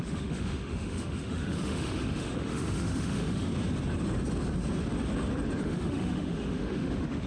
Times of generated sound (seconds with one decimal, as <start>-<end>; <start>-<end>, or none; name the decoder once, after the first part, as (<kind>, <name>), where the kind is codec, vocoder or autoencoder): 0.0-3.5 (autoencoder, DAC-VAE); 5.6-7.3